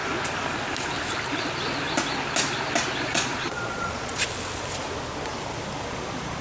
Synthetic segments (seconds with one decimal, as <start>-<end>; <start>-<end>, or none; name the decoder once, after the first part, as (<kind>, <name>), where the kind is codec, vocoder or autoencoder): 3.1-4.3 (vocoder, Vocos)